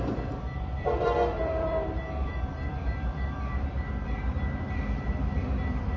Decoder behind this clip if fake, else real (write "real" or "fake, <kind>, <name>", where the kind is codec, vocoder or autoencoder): fake, vocoder, BigVGAN v2